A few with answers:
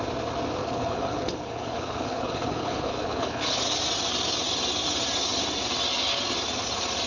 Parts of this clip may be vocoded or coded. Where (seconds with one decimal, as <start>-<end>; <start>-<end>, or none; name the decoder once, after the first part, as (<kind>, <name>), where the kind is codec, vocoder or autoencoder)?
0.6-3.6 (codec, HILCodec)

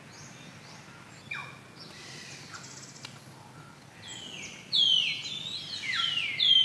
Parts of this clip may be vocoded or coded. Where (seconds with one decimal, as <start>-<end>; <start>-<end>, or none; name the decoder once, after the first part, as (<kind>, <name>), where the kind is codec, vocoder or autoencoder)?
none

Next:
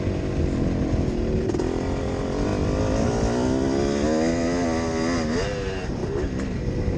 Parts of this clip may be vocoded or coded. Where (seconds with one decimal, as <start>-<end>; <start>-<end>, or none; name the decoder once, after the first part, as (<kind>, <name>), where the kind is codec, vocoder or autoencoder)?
none

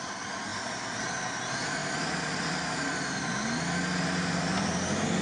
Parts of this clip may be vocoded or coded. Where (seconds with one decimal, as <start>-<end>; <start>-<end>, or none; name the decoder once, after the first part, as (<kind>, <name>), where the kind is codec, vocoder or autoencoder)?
none